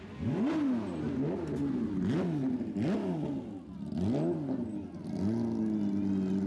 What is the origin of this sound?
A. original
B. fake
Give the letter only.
A